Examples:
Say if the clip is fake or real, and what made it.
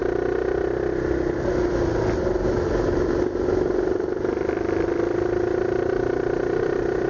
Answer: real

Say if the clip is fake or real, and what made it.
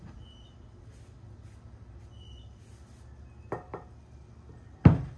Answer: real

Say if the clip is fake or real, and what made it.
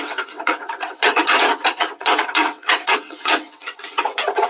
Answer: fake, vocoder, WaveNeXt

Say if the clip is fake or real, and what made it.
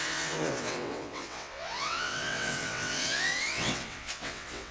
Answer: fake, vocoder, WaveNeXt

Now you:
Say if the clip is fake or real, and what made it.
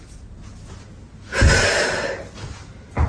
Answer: real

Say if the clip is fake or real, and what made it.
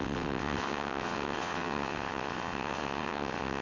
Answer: fake, vocoder, WaveNeXt